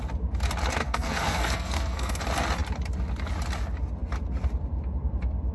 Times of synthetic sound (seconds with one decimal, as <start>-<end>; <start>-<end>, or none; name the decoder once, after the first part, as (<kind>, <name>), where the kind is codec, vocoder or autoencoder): 0.8-2.2 (codec, SNAC)